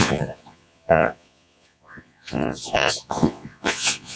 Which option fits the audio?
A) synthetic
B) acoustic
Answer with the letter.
A